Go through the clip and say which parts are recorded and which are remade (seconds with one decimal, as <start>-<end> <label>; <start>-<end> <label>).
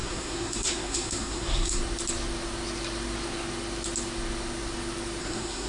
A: 0.0-1.8 remade; 1.8-5.2 recorded; 5.2-5.7 remade